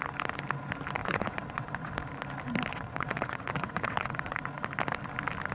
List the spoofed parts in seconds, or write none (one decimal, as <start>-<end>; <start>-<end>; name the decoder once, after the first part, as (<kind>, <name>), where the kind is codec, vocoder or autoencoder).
1.0-1.9 (vocoder, WaveNeXt); 2.7-4.4